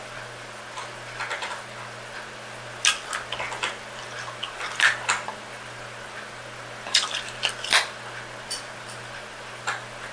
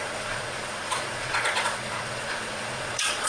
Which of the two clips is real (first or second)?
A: first